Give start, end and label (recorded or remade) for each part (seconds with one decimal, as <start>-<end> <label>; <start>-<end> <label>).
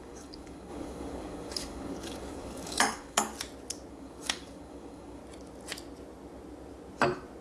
0.0-3.3 remade; 3.3-3.9 recorded; 3.9-5.2 remade; 5.2-7.4 recorded